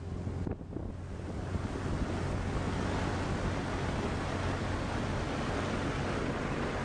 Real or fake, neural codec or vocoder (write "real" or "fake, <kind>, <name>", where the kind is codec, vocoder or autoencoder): real